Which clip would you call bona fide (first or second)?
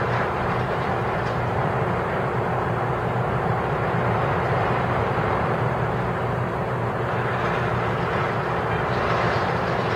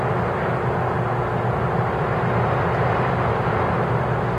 second